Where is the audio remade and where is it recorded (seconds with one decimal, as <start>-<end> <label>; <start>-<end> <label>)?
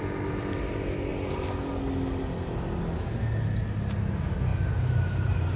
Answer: 0.0-4.5 recorded; 4.5-5.6 remade